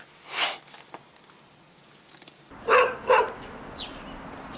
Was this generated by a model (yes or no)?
no